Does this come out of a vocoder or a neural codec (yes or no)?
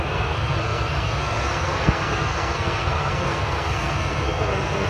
yes